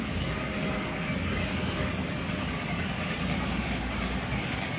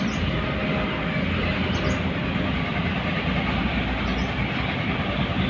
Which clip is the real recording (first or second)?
second